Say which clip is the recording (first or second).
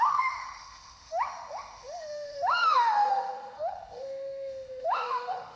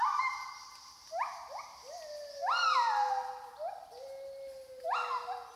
second